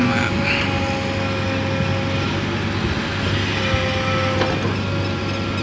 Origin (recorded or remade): recorded